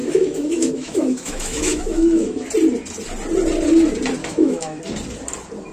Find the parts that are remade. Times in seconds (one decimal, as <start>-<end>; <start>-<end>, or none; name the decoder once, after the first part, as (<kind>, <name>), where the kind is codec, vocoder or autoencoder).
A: 0.0-2.5 (autoencoder, DAC-VAE); 4.2-4.8